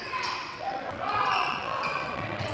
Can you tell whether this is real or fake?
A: fake